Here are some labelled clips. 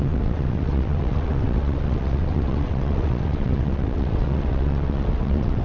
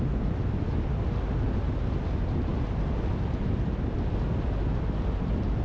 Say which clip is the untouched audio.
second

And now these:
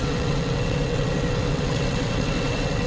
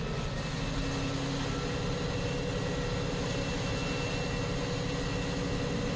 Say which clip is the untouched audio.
second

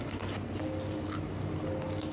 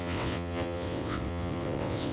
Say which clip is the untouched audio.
first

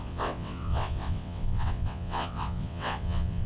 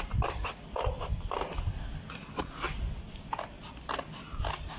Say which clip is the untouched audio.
second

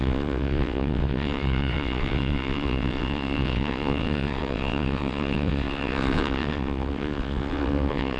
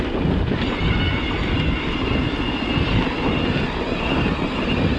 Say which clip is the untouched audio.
second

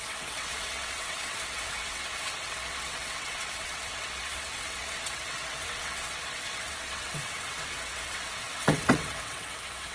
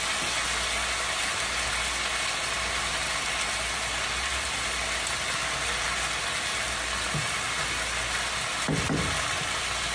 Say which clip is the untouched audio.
second